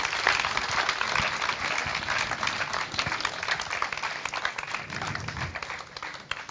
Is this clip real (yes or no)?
yes